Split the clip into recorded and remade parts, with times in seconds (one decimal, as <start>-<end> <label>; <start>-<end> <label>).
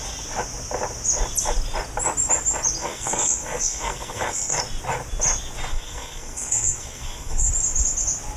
0.0-2.8 recorded; 2.8-4.6 remade; 4.6-5.7 recorded; 5.7-7.5 remade; 7.5-8.4 recorded